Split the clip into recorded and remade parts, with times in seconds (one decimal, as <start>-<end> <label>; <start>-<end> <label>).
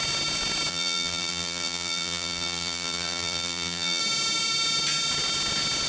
0.0-0.7 recorded; 0.7-4.0 remade; 4.0-5.9 recorded